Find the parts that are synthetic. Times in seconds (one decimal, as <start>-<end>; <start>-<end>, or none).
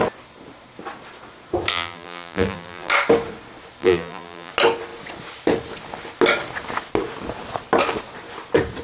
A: 1.7-2.9; 3.8-4.5